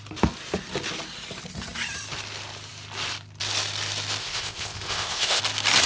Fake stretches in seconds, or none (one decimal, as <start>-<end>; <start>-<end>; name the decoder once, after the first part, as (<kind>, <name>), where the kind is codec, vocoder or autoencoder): 4.2-5.4 (codec, ZipCodec)